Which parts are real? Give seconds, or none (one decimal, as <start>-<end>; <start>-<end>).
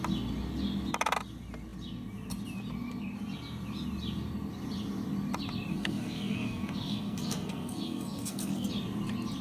0.0-5.7; 8.7-9.4